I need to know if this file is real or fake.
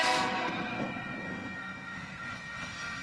fake